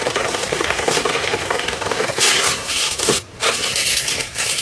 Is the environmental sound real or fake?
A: fake